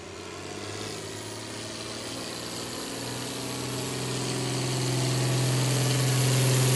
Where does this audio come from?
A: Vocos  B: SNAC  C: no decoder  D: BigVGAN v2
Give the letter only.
C